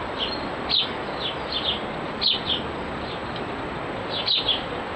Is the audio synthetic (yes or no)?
no